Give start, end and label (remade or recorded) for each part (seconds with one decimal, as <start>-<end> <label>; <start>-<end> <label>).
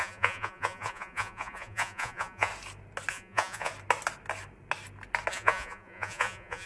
0.0-2.5 remade; 2.5-3.1 recorded; 3.1-3.7 remade; 3.7-5.3 recorded; 5.3-6.7 remade